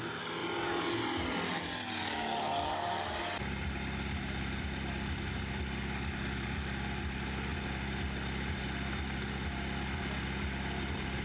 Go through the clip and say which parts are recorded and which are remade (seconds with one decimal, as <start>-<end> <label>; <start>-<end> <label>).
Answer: 0.0-11.2 recorded